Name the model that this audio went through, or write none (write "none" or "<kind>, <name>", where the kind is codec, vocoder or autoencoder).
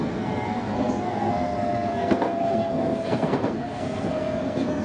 codec, SNAC